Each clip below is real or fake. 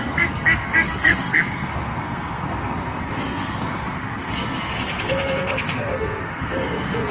fake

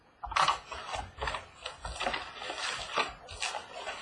real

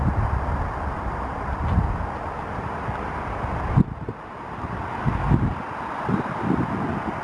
real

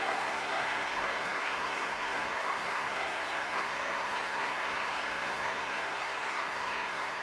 fake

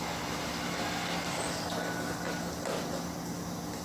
real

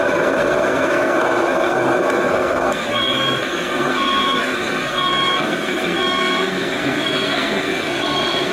fake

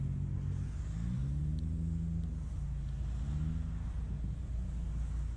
real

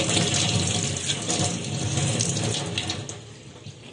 real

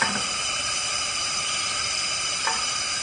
real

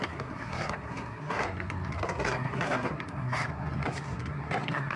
fake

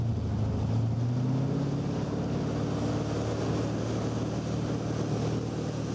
real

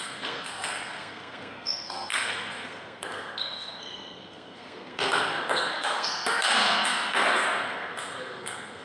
fake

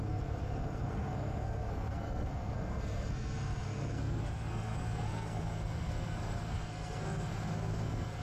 fake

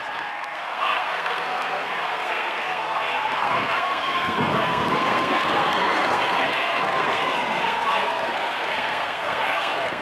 fake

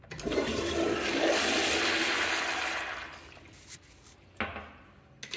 real